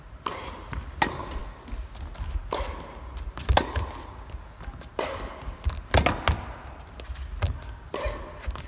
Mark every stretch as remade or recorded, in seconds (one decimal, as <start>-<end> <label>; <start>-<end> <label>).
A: 0.0-8.7 recorded